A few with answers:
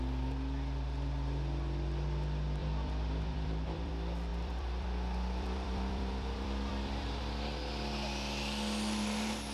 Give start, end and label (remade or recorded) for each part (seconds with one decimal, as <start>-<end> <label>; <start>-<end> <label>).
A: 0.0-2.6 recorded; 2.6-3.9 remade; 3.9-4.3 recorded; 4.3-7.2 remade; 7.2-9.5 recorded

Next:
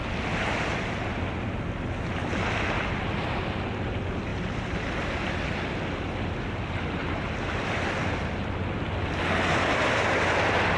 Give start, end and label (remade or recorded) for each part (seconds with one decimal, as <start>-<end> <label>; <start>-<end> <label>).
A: 0.0-10.8 recorded

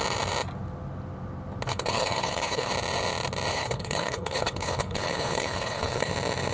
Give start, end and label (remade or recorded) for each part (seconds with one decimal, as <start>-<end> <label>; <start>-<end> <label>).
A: 0.0-1.7 recorded; 1.7-2.7 remade; 2.7-3.5 recorded; 3.5-6.1 remade; 6.1-6.5 recorded